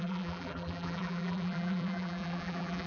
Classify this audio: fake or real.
fake